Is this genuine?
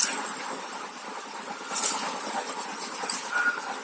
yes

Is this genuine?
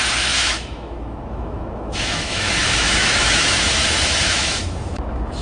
no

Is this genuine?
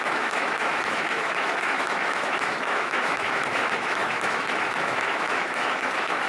no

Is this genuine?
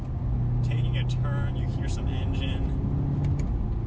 yes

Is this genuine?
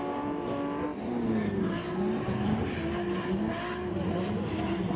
yes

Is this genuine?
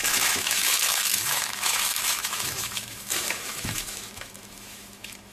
no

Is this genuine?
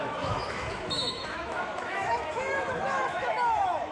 no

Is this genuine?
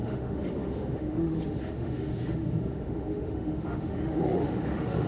no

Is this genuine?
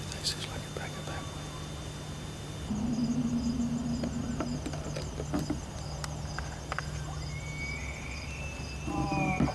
yes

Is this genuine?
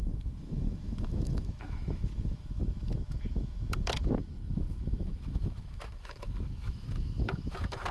no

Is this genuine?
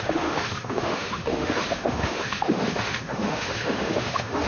no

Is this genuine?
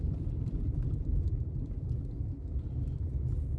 yes